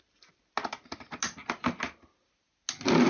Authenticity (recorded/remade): recorded